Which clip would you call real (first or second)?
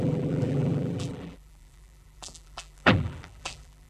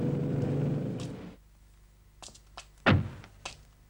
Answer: second